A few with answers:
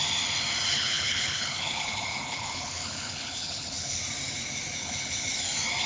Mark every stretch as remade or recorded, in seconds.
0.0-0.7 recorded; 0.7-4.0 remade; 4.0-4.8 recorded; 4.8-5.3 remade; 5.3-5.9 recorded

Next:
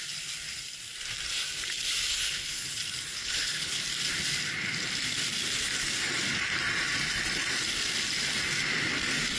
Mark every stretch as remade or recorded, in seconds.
0.0-2.1 recorded; 2.1-2.7 remade; 2.7-3.2 recorded; 3.2-3.8 remade; 3.8-9.4 recorded

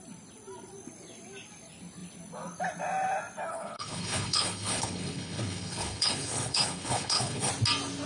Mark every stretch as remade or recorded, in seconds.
0.0-3.5 recorded; 3.5-7.5 remade; 7.5-8.1 recorded

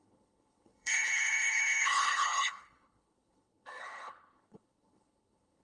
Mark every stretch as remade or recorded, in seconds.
0.0-5.6 remade